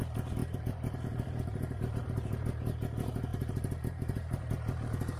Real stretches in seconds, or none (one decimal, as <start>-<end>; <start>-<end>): 0.0-0.4; 2.8-3.3; 4.4-5.2